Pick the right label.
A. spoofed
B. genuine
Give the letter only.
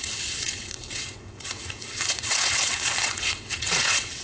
A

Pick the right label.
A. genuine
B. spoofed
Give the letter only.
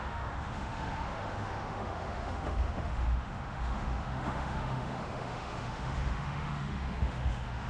B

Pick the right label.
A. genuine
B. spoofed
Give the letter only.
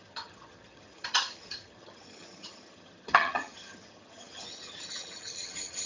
B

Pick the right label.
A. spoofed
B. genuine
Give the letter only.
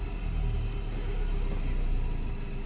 B